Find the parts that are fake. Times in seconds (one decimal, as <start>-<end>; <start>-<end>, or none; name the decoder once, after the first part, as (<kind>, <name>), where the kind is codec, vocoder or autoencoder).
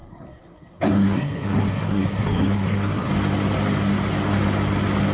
0.0-3.1 (codec, SNAC)